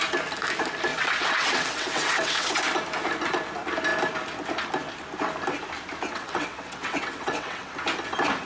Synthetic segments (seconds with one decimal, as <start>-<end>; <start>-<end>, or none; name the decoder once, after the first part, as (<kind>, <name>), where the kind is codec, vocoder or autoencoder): 0.9-2.6 (vocoder, WaveNeXt); 6.1-7.7